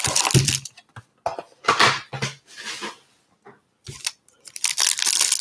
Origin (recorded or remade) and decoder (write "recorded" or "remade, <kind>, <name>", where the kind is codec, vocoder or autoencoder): recorded